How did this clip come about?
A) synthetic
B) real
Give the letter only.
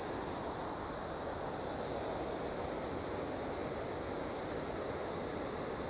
B